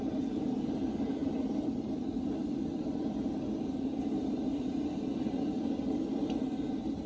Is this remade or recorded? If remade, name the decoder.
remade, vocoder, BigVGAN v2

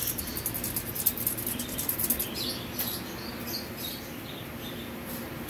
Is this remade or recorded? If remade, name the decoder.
recorded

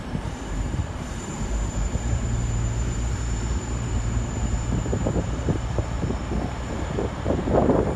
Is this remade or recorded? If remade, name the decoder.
remade, vocoder, BigVGAN v2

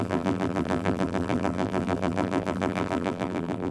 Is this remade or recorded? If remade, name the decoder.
remade, vocoder, BigVGAN v2